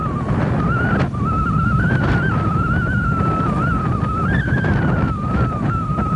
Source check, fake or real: real